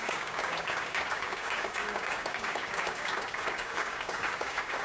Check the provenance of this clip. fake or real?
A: fake